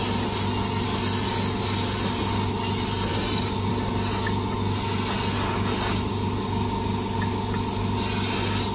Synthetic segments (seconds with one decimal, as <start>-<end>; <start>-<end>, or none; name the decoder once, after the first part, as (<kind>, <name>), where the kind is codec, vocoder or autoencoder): none